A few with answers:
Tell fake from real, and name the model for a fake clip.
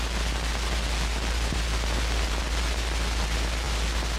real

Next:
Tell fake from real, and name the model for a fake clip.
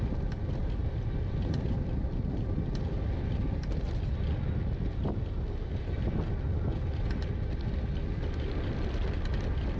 real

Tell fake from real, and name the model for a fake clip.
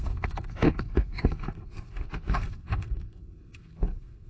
fake, codec, SNAC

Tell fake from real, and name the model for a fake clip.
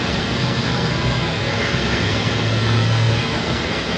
fake, codec, SNAC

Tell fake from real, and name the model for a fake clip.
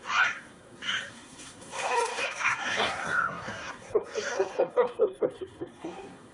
fake, codec, SNAC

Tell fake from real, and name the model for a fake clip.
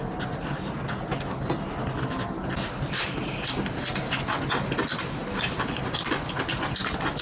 real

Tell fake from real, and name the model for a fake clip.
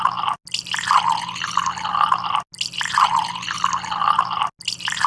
real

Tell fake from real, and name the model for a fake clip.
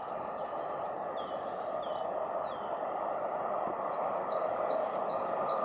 real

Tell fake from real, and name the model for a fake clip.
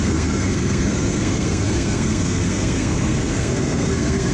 fake, codec, SNAC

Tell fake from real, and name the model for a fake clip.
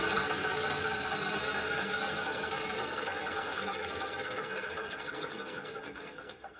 fake, codec, SNAC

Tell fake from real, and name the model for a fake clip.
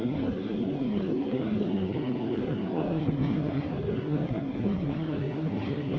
fake, codec, SNAC